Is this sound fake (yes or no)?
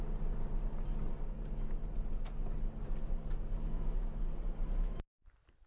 no